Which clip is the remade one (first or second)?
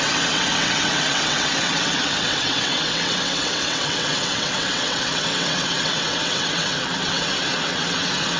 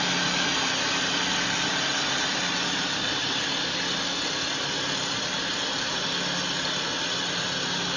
first